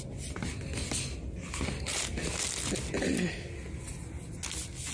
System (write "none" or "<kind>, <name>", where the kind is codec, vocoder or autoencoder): none